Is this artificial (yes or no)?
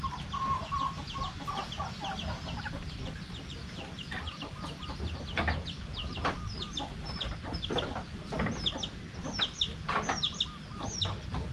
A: no